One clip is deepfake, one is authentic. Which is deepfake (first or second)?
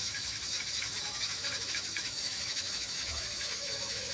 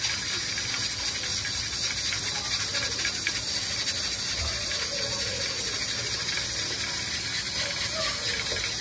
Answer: first